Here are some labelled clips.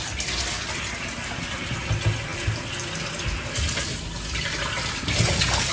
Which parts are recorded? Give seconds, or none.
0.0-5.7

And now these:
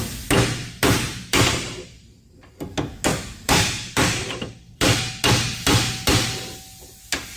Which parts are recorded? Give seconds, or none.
0.0-0.6; 2.5-3.1; 5.1-7.4

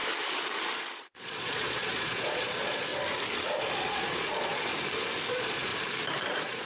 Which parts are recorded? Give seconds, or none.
0.0-0.8; 2.9-3.6; 4.7-5.3; 5.7-6.3

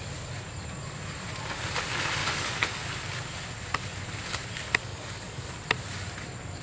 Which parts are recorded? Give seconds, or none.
0.0-2.2; 2.8-4.8; 5.5-6.6

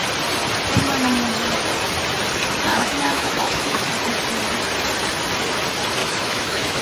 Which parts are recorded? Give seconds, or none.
0.0-2.7; 3.9-6.0

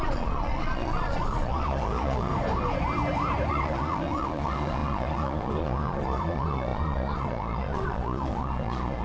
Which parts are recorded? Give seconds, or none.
2.3-3.5

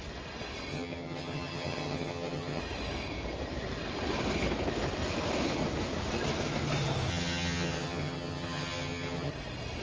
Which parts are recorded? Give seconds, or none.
0.0-0.7; 2.6-7.1; 9.3-9.8